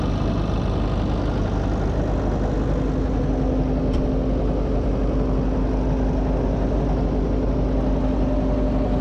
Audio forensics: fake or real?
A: real